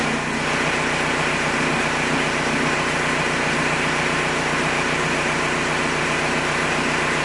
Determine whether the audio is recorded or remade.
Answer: recorded